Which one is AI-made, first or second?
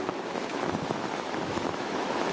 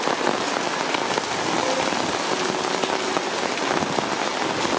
first